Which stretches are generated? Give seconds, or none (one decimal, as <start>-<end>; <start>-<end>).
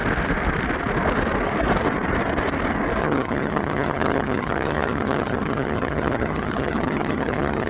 3.0-7.7